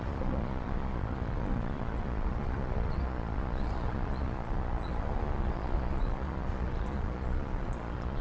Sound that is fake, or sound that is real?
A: fake